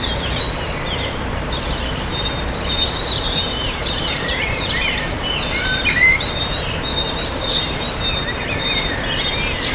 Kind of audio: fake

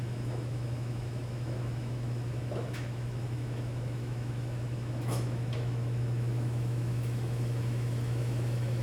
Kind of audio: fake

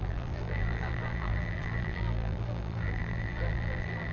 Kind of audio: fake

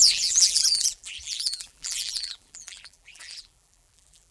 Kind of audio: fake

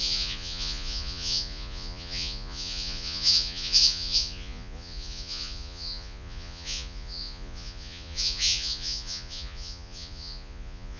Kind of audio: fake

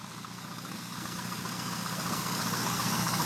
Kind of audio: fake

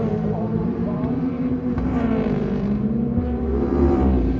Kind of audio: fake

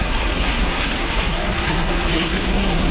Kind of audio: fake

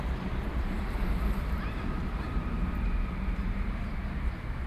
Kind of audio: fake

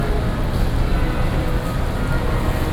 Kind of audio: real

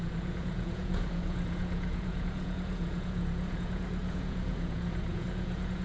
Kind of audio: fake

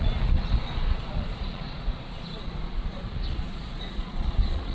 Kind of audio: fake